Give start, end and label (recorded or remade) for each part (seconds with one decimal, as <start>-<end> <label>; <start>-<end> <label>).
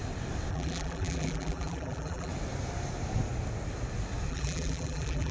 0.0-0.5 recorded; 0.5-2.3 remade; 2.3-4.3 recorded; 4.3-5.3 remade